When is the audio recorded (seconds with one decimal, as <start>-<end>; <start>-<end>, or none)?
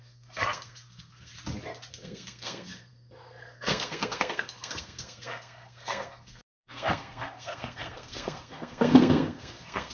1.3-1.9